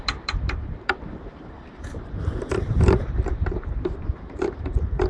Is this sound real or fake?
fake